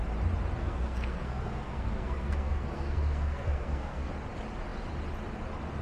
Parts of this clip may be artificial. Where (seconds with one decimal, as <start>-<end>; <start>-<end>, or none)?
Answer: 0.6-4.1